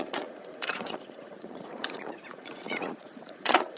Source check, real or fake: fake